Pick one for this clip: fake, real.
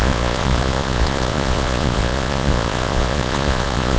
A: fake